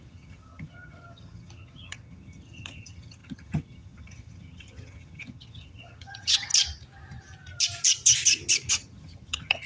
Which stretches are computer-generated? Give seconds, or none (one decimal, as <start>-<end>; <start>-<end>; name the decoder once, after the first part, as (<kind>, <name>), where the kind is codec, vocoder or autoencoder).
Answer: 0.0-6.5 (vocoder, HiFi-GAN); 8.7-9.7